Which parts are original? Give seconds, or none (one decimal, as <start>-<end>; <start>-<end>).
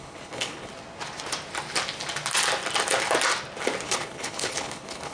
0.7-3.8